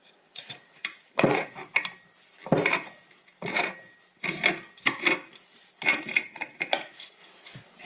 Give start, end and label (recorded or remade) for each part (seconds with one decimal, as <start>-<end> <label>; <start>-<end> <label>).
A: 0.0-1.6 remade; 1.6-6.3 recorded; 6.3-7.2 remade; 7.2-7.9 recorded